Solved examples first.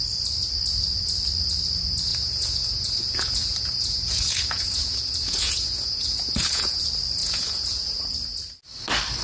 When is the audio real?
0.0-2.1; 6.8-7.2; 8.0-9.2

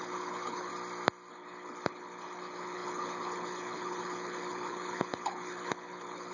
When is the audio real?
0.7-1.3

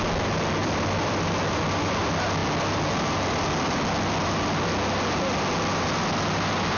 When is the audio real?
0.0-0.6; 2.0-6.8

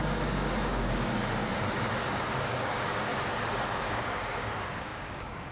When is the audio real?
1.4-2.4; 3.1-3.7

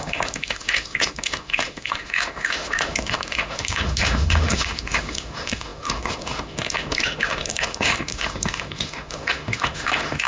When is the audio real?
none

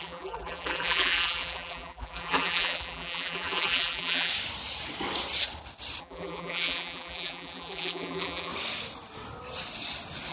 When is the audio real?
4.3-6.0; 8.5-10.3

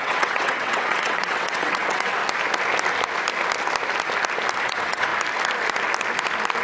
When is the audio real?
2.2-4.6; 5.1-6.6

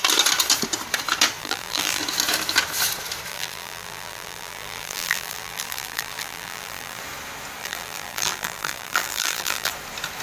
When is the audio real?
0.0-1.4; 2.0-3.3; 7.0-7.6; 9.7-10.2